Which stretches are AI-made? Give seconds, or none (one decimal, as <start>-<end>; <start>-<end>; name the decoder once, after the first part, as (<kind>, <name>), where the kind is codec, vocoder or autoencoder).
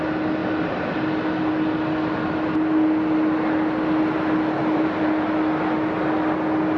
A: 4.6-5.3 (vocoder, BigVGAN v2)